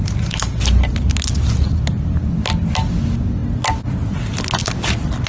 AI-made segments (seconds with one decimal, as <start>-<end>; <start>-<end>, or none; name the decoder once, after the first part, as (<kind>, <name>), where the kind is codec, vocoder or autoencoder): none